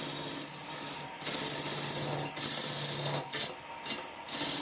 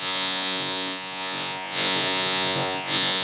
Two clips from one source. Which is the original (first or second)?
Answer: first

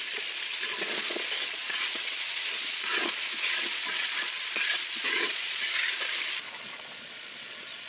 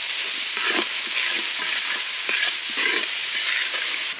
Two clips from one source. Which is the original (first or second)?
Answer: second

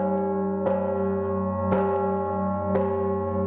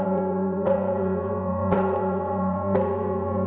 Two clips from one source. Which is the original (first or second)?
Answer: first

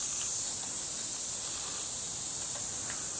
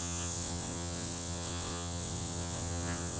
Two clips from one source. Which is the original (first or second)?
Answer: first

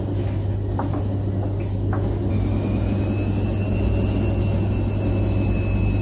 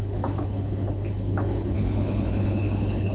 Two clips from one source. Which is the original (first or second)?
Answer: first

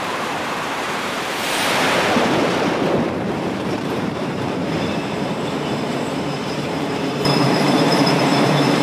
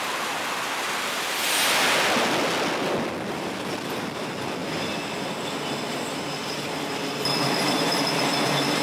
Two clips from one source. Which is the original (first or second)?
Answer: second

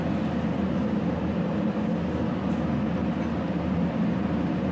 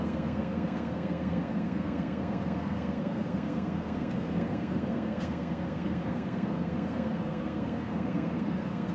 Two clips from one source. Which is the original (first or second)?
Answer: first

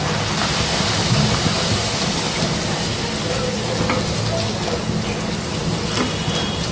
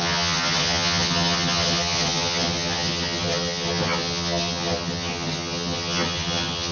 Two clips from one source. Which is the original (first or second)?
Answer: first